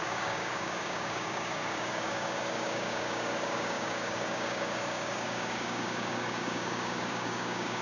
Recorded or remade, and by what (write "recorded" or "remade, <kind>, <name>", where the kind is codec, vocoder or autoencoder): remade, codec, DAC